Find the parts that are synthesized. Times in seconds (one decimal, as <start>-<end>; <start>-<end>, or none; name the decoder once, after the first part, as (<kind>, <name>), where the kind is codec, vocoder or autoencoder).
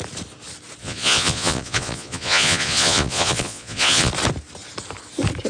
0.8-4.1 (vocoder, Vocos)